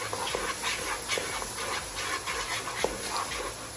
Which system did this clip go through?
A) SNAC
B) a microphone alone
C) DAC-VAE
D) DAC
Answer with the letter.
B